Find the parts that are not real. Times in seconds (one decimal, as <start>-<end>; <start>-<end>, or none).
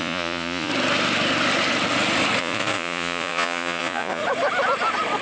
0.0-0.7; 2.4-4.2